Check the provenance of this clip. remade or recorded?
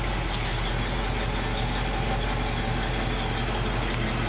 recorded